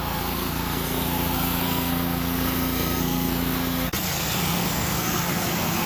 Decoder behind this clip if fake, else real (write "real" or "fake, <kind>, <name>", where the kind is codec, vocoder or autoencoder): fake, codec, SNAC